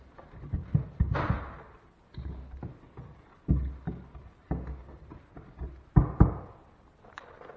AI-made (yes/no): no